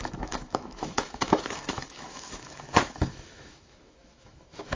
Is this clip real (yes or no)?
no